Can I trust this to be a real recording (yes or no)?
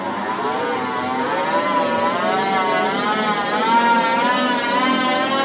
yes